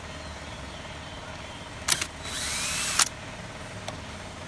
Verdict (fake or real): real